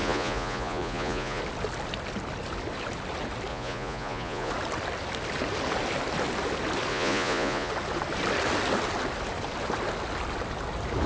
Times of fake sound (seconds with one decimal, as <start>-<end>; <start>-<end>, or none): 0.0-1.4; 3.5-4.5; 6.9-7.7